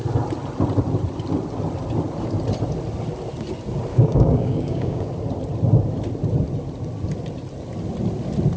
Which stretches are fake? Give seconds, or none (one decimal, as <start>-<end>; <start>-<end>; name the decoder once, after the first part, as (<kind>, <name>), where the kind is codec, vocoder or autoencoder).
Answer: 3.9-5.1 (codec, DAC)